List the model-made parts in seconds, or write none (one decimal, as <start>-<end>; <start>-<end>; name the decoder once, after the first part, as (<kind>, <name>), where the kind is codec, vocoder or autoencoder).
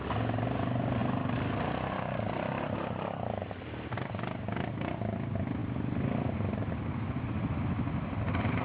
none